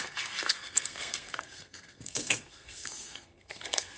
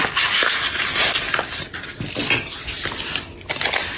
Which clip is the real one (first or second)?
second